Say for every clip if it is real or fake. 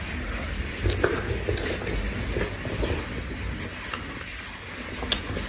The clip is real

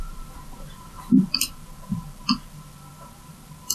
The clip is real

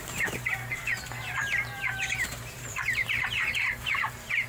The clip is fake